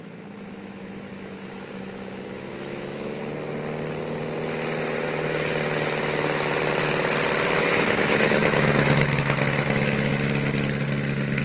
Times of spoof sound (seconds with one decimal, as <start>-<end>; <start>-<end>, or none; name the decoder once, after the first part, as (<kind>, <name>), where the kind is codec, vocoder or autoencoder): 0.0-3.2 (autoencoder, DAC-VAE); 7.6-10.1